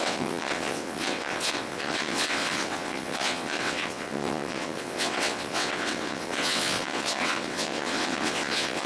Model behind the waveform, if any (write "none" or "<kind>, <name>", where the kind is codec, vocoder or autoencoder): vocoder, WaveNeXt